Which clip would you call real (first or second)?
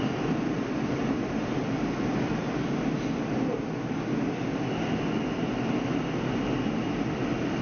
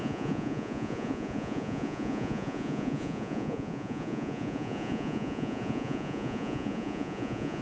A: first